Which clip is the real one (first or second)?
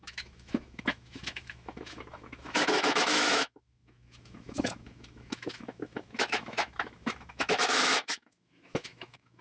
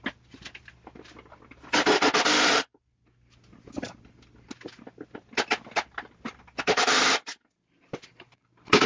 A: second